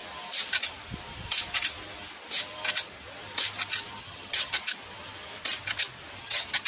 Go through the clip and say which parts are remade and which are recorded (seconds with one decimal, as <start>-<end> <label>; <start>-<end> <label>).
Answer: 0.0-4.0 recorded; 4.0-4.6 remade; 4.6-6.2 recorded; 6.2-6.7 remade